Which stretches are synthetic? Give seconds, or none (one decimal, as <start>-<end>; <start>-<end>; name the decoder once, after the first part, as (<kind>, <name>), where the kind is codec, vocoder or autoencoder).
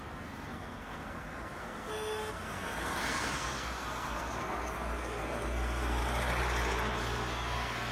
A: 0.0-6.0 (codec, SNAC); 7.3-7.9